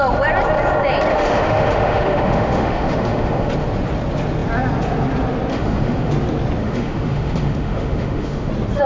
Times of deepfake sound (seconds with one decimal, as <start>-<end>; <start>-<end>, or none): 1.1-3.5; 5.5-6.1; 6.6-8.5